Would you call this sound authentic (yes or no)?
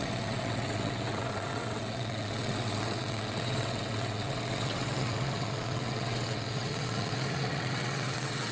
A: no